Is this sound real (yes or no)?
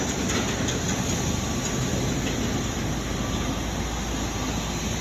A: yes